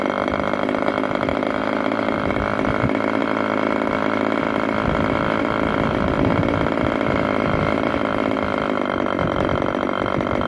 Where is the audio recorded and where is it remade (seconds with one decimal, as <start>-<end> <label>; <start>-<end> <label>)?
0.0-1.3 recorded; 1.3-2.3 remade; 2.3-10.5 recorded